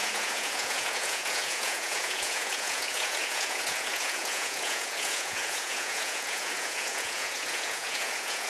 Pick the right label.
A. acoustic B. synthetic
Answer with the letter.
B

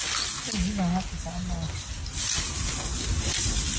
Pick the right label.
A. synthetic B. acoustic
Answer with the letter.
B